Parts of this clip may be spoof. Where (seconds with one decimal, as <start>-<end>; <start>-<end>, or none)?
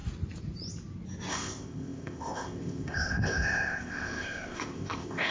1.3-5.3